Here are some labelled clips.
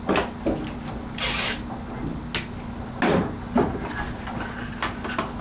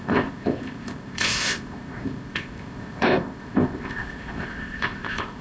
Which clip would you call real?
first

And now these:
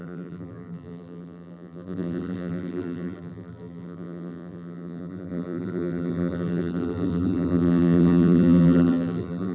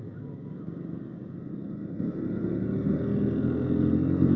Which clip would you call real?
second